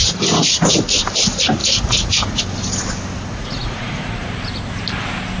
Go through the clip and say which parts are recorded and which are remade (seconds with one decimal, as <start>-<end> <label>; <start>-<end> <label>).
0.0-1.6 recorded; 1.6-2.4 remade; 2.4-3.3 recorded; 3.3-4.2 remade; 4.2-5.4 recorded